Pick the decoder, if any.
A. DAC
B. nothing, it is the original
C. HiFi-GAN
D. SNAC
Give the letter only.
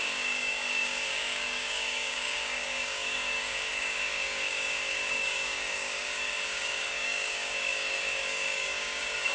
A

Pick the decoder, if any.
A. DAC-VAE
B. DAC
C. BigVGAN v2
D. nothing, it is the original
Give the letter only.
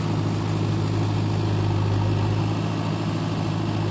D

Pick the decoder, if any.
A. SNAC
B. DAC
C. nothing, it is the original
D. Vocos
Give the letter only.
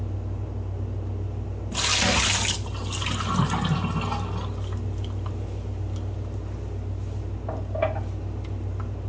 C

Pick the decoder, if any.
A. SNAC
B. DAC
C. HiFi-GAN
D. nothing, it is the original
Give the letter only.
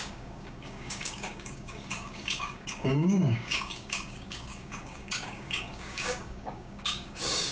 B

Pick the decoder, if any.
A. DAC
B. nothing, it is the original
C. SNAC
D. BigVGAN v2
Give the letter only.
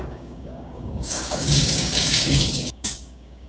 A